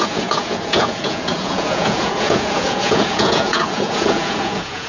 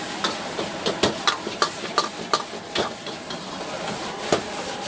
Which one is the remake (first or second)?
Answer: first